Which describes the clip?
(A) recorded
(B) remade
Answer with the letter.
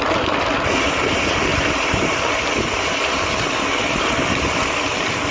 B